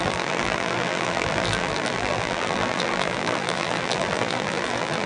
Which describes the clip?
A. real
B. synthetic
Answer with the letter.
B